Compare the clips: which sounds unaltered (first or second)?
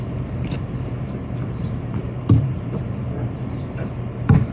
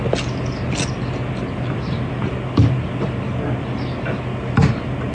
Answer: second